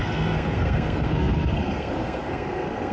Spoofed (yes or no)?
yes